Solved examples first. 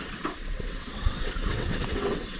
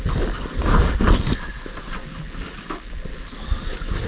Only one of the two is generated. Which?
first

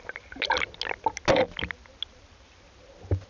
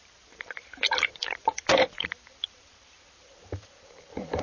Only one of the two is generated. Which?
second